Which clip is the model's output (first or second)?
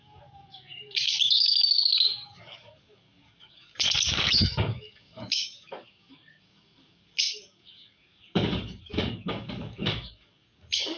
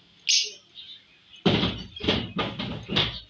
first